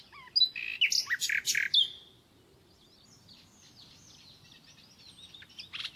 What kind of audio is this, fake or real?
real